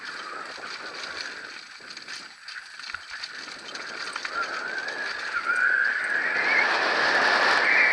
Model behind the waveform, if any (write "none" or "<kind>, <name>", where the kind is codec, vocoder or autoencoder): none